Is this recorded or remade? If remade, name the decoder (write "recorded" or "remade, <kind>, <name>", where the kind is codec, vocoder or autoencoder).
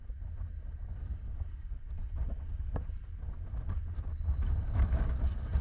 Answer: recorded